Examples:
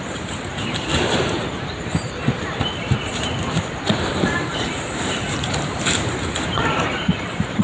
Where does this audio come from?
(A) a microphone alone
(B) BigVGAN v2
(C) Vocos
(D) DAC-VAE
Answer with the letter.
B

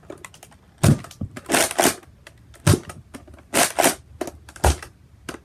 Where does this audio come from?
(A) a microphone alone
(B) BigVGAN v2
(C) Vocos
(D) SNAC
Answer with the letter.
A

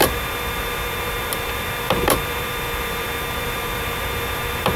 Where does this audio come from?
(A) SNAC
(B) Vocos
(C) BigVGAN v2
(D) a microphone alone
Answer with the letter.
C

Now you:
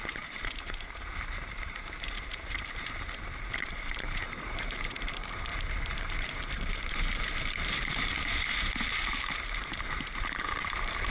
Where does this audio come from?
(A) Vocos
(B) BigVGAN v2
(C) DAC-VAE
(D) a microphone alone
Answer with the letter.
B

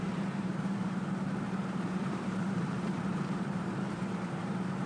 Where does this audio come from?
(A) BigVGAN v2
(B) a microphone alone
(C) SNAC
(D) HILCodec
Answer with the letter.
A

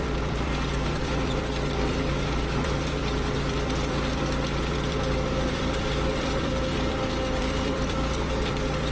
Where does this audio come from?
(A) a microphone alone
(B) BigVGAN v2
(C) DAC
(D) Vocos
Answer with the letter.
B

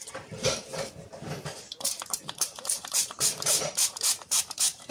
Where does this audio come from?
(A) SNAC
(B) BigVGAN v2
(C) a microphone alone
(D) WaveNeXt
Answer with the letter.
B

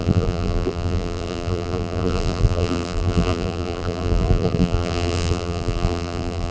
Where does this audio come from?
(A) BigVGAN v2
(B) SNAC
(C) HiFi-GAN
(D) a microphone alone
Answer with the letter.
A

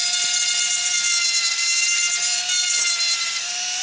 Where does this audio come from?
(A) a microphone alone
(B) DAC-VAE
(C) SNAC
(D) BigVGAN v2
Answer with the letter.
D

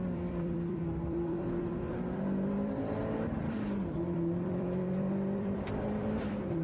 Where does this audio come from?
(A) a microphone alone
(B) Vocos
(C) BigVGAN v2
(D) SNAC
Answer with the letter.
C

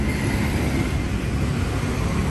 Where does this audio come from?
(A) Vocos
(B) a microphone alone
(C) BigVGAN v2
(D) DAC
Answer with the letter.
B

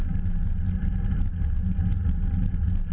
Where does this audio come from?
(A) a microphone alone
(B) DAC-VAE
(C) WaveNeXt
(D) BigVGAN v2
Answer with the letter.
A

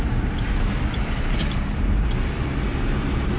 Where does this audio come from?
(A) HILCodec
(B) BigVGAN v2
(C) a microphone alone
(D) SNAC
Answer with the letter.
C